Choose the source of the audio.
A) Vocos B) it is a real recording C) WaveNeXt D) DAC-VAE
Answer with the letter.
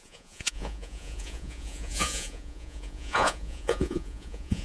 A